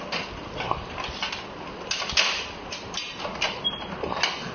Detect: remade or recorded recorded